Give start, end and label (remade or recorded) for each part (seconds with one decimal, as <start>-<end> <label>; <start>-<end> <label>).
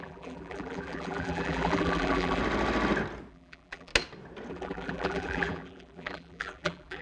0.0-2.4 remade; 2.4-3.3 recorded; 3.3-3.9 remade; 3.9-4.5 recorded; 4.5-7.0 remade